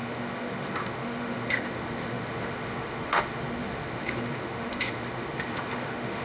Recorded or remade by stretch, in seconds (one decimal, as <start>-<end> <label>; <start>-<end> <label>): 0.0-6.2 remade